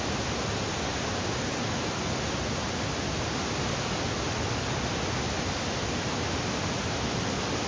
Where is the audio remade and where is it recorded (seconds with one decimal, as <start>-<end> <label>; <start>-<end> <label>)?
0.0-7.7 recorded